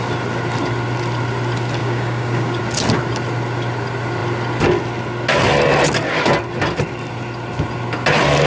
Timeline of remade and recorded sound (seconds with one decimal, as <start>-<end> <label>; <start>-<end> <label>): 0.0-1.8 recorded; 1.8-2.6 remade; 2.6-8.5 recorded